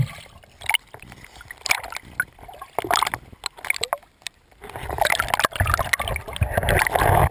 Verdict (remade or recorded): recorded